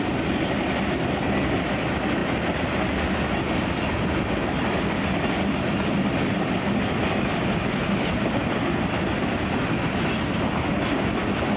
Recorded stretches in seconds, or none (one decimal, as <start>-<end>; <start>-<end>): 0.0-11.6